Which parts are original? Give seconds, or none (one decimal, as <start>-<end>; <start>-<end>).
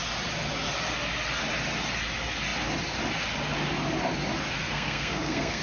0.0-4.6